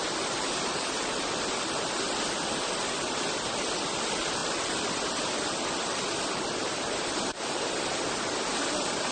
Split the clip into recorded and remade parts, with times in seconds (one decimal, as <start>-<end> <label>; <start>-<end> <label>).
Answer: 0.0-1.9 remade; 1.9-4.4 recorded; 4.4-4.9 remade; 4.9-9.1 recorded